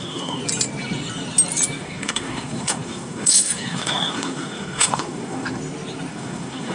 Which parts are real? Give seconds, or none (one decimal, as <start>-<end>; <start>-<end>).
0.4-1.8; 5.6-6.1